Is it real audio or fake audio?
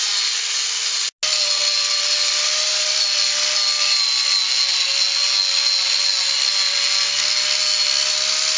real